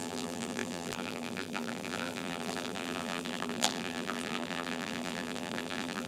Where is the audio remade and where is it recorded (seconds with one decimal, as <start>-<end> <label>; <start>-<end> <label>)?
0.0-6.1 remade